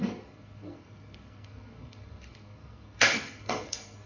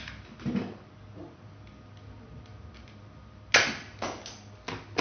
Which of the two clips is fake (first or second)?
first